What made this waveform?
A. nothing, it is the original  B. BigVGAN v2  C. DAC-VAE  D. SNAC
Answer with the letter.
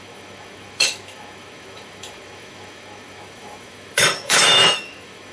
C